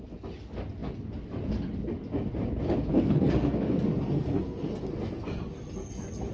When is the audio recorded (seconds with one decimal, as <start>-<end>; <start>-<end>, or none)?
0.0-2.9; 4.8-6.3